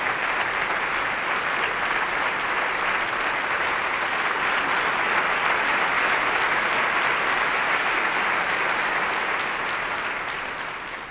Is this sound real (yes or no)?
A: yes